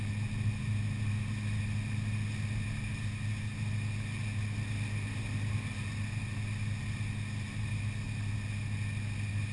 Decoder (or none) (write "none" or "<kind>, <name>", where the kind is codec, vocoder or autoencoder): none